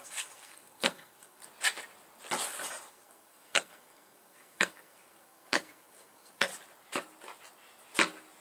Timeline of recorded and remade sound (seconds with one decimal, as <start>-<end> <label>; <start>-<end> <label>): 0.0-1.4 remade; 1.4-2.9 recorded; 2.9-6.5 remade; 6.5-8.4 recorded